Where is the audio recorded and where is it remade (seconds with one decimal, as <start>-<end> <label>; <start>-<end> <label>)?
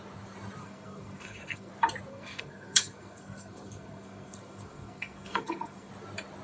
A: 0.0-0.6 recorded; 0.6-1.7 remade; 1.7-2.1 recorded; 2.1-5.9 remade; 5.9-6.4 recorded